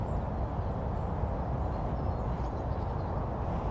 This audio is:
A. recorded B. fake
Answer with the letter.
A